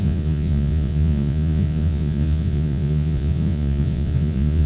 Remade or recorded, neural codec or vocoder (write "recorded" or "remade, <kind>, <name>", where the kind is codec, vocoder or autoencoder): remade, vocoder, Vocos